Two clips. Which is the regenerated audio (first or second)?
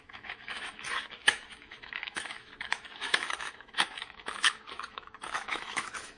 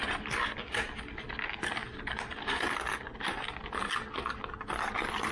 first